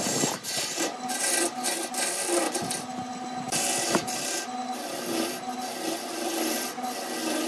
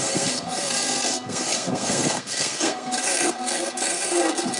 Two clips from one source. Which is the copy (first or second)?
second